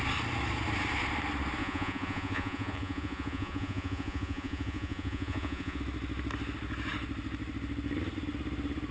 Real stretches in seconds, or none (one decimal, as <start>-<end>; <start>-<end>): 0.0-1.6; 5.8-8.9